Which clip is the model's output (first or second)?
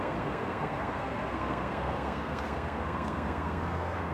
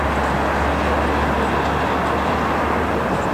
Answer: first